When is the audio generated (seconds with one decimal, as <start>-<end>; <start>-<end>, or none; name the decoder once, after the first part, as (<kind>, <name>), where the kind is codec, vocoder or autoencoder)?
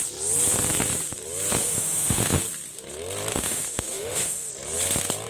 1.6-2.4 (autoencoder, DAC-VAE); 3.3-4.5